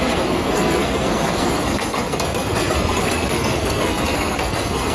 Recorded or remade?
remade